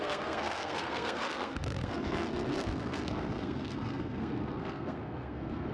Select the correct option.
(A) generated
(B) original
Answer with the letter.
A